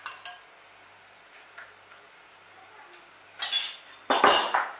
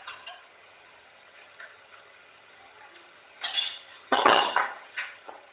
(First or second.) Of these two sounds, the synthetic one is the second